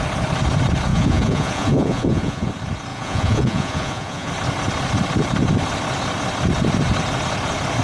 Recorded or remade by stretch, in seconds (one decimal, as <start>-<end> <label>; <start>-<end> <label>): 0.0-0.9 recorded; 0.9-2.5 remade; 2.5-2.9 recorded; 2.9-4.3 remade; 4.3-7.8 recorded